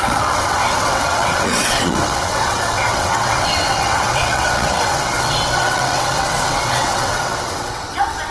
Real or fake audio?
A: fake